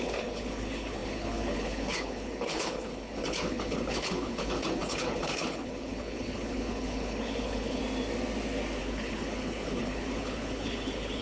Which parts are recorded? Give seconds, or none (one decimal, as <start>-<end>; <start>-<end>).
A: 7.8-8.8